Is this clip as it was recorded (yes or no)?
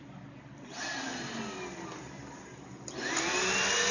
yes